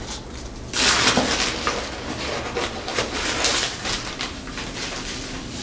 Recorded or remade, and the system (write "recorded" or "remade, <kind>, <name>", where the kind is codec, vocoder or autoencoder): recorded